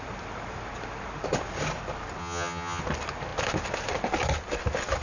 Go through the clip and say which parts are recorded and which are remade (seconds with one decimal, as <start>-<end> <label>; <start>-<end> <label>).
0.0-2.2 recorded; 2.2-2.8 remade; 2.8-5.0 recorded